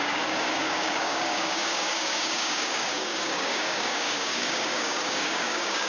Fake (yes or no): yes